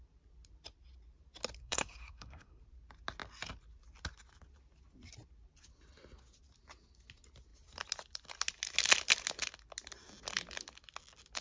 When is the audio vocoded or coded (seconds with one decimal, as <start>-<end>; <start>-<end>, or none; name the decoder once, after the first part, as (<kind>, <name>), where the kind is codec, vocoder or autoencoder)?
1.6-2.6 (codec, SNAC)